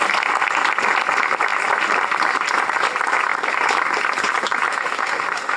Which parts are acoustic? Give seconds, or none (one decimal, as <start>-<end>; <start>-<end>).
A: 0.0-4.7